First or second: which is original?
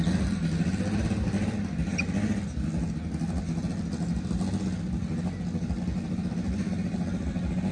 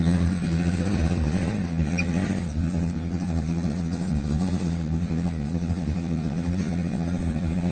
first